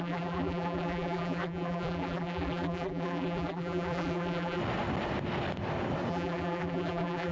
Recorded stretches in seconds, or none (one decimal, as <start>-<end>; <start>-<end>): 4.6-6.1